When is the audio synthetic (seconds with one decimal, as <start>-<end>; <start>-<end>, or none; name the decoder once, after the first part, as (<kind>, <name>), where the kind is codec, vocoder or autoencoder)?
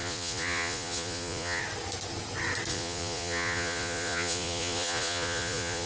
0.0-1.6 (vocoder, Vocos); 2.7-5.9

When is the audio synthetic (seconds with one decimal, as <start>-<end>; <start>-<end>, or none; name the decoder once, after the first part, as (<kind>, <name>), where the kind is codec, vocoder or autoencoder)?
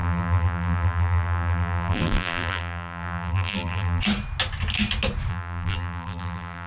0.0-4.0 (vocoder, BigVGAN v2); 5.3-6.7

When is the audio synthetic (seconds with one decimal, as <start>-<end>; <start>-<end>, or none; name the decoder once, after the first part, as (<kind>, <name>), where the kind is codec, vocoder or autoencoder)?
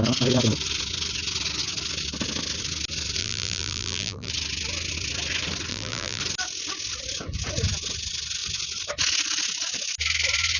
3.2-4.3 (vocoder, BigVGAN v2); 5.7-6.2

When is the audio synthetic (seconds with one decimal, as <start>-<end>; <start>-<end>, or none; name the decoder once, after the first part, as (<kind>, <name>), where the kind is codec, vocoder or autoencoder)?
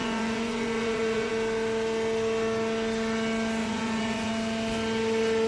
0.0-1.3 (vocoder, Vocos); 3.6-4.3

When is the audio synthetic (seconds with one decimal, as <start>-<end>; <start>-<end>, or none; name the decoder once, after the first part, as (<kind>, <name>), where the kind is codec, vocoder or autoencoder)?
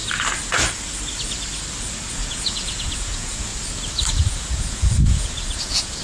2.1-3.5 (vocoder, Vocos); 4.1-6.0